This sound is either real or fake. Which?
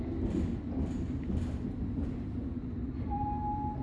real